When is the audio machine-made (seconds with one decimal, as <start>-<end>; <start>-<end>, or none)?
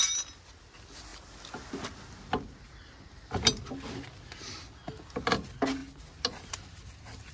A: none